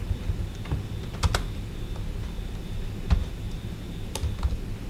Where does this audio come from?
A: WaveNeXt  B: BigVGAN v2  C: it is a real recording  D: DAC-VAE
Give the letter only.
C